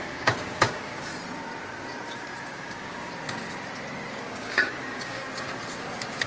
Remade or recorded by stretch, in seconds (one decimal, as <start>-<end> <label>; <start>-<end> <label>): 0.0-1.1 remade; 1.1-2.5 recorded; 2.5-3.1 remade; 3.1-4.1 recorded; 4.1-5.2 remade; 5.2-6.3 recorded